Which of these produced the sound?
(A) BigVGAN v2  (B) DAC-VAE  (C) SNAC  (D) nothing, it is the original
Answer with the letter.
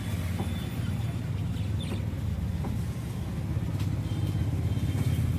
D